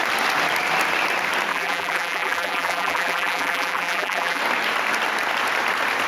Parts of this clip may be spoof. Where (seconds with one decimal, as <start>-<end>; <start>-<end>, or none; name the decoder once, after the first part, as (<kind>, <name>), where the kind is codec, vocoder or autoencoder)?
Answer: 1.5-4.4 (vocoder, BigVGAN v2)